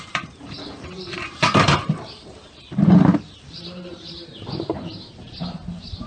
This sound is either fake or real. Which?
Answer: fake